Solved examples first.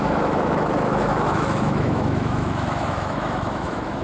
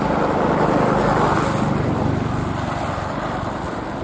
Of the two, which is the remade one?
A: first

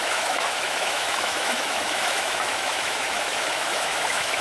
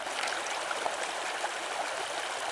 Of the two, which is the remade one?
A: first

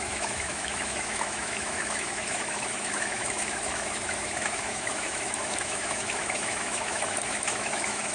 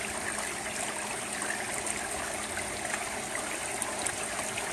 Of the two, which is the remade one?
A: first